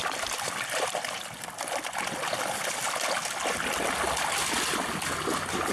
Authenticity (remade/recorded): recorded